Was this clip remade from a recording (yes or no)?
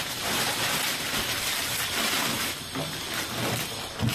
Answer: no